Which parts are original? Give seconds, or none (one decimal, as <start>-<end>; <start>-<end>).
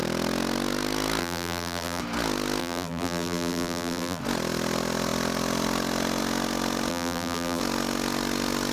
0.0-1.2; 2.0-2.6; 4.2-6.9; 7.6-8.7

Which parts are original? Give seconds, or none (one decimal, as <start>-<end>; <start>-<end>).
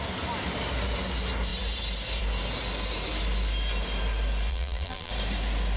0.0-4.5; 5.1-5.8